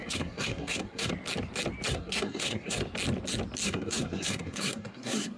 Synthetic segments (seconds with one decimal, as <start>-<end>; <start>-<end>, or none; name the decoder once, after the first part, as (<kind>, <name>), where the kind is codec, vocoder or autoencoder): 0.0-1.1 (codec, SNAC); 1.9-2.8; 3.6-5.4